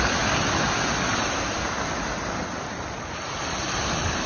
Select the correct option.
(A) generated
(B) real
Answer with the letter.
B